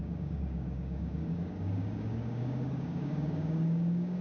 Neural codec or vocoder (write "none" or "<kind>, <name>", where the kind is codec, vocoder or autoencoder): codec, DAC